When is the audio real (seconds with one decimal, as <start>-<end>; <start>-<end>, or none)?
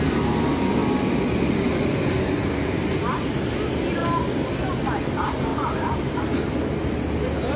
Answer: 0.0-7.6